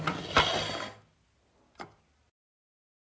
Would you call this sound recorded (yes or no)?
yes